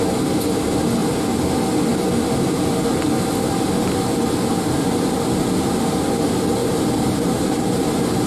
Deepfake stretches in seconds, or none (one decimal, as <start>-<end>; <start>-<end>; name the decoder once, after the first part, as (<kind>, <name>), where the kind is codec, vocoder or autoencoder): 6.6-7.9 (vocoder, BigVGAN v2)